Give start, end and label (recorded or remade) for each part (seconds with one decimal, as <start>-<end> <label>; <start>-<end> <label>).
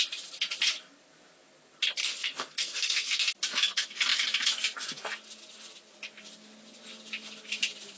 0.0-2.0 recorded; 2.0-3.3 remade; 3.3-8.0 recorded